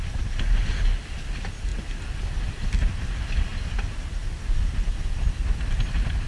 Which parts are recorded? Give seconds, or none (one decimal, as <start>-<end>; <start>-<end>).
0.0-6.3